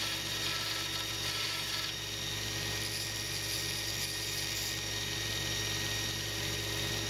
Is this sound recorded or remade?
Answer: recorded